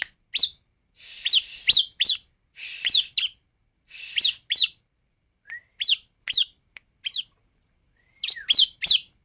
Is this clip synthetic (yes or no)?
no